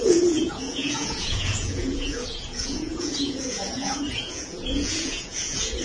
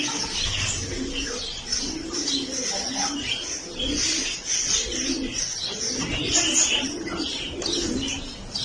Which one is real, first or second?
second